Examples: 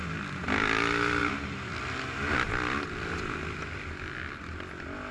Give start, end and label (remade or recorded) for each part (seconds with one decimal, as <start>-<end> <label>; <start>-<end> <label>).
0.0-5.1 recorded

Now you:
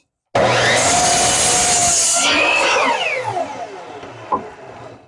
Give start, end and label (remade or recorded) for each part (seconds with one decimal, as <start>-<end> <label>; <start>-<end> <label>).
0.0-5.1 recorded

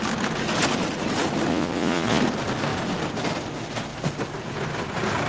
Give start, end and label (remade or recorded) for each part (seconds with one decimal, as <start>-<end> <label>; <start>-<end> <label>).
0.0-1.5 recorded; 1.5-2.2 remade; 2.2-5.3 recorded

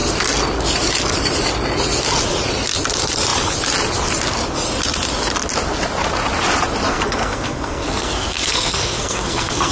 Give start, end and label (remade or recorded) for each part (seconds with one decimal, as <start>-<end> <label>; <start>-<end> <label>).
0.0-6.9 recorded; 6.9-9.7 remade